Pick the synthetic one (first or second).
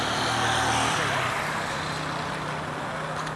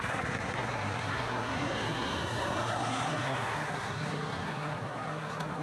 second